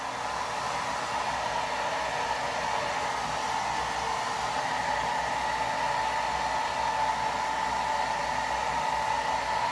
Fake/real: real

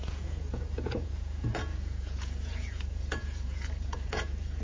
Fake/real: fake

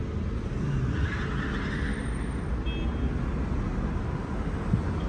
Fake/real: real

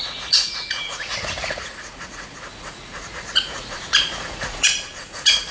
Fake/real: fake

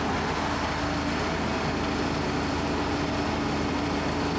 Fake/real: real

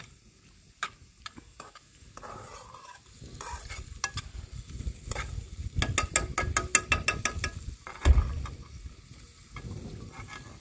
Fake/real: real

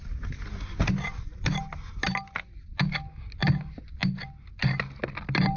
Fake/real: real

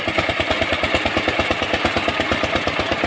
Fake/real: real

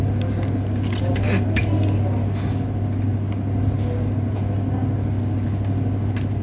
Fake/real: real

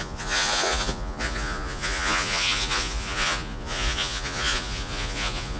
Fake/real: fake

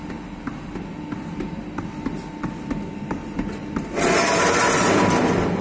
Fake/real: real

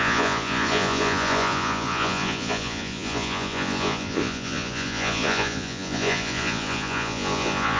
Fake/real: fake